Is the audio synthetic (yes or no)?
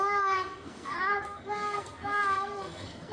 yes